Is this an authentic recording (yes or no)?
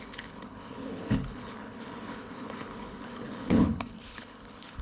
no